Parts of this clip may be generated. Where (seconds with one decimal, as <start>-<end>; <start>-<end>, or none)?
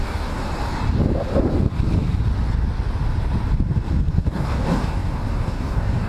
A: 0.0-0.4; 4.1-6.1